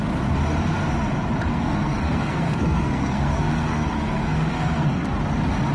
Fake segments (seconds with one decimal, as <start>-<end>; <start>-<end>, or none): 1.5-4.9